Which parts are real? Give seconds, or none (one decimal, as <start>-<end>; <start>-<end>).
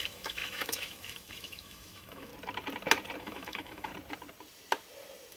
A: 2.3-3.2; 3.9-5.4